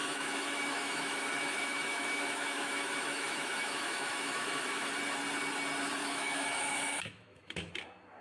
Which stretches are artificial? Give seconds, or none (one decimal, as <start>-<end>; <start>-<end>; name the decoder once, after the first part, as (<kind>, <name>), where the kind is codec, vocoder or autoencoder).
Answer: 0.0-4.9 (autoencoder, DAC-VAE); 6.0-7.7